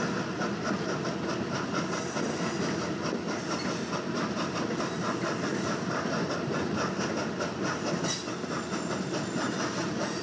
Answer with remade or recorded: recorded